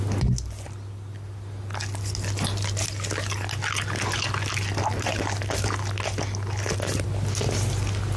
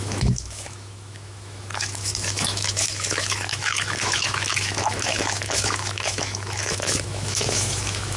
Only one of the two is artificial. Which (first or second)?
second